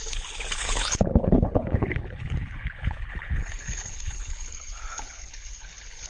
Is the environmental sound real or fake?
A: fake